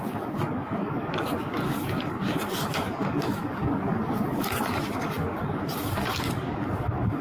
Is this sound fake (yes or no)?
yes